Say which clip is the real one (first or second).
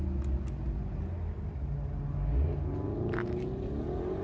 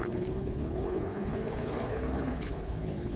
first